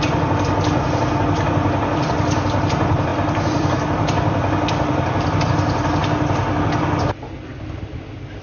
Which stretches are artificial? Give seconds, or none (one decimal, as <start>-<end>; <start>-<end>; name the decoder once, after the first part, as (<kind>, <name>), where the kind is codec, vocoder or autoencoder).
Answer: 3.1-5.5 (vocoder, BigVGAN v2)